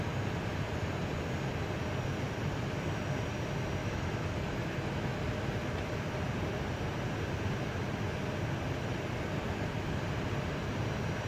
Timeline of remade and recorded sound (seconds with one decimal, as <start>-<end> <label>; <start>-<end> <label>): 0.0-3.8 recorded; 3.8-5.2 remade; 5.2-11.3 recorded